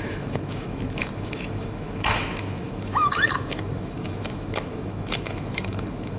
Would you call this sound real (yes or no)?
no